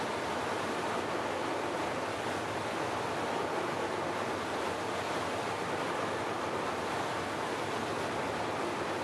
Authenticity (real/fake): real